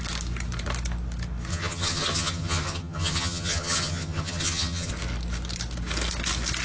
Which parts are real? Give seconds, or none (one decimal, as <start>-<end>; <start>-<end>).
0.0-1.5; 4.9-6.6